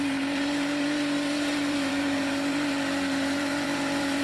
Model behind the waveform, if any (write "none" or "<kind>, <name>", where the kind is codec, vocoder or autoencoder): vocoder, BigVGAN v2